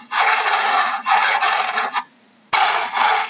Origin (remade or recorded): remade